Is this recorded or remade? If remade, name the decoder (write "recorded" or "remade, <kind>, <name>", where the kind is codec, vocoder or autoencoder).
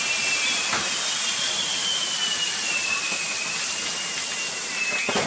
recorded